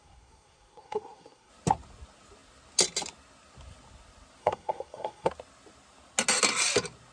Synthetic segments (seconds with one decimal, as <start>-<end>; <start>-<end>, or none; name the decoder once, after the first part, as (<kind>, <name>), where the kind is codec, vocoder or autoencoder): 0.0-1.5 (codec, SNAC); 4.4-5.3